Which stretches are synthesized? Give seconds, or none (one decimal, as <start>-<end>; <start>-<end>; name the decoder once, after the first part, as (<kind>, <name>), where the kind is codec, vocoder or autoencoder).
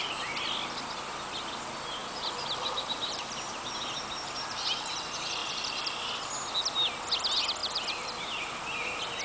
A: 2.0-3.5 (vocoder, BigVGAN v2); 5.4-6.3; 7.6-8.4